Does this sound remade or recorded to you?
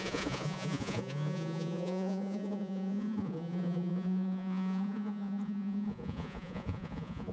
remade